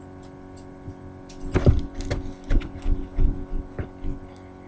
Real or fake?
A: real